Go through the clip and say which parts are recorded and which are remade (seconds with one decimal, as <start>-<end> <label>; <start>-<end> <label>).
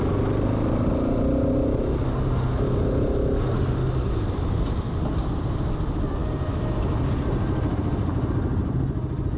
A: 0.0-9.4 recorded